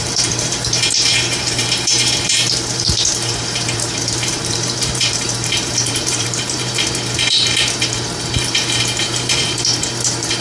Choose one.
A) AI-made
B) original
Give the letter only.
A